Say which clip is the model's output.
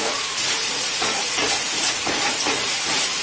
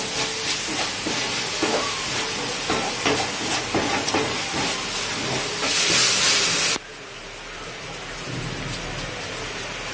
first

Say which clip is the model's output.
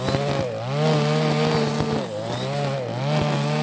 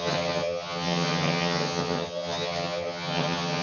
second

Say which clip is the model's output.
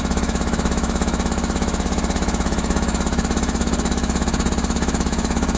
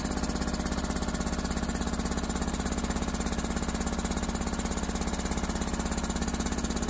first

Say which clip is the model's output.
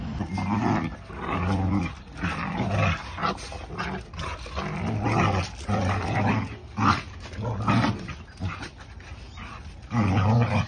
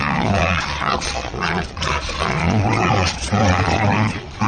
second